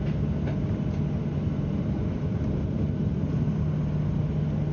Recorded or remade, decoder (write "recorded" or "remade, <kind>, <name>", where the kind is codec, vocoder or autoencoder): recorded